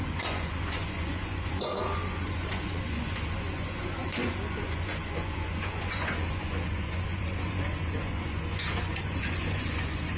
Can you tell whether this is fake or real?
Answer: fake